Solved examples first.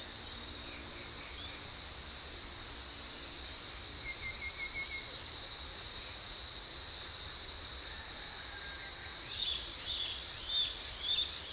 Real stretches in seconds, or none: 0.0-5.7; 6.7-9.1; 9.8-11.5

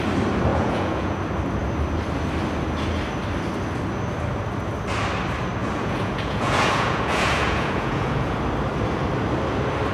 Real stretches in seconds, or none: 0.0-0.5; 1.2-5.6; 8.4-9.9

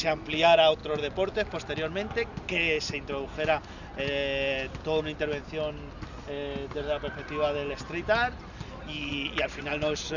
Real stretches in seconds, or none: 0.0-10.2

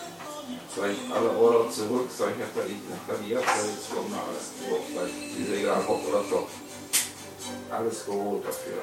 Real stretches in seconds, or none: 0.0-1.6; 6.6-8.8

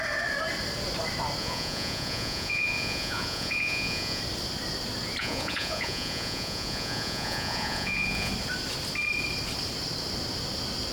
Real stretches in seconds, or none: 0.0-1.4; 4.2-5.2; 8.3-10.9